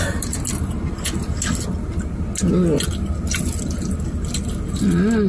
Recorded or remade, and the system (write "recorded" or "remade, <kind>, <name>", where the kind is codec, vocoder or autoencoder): recorded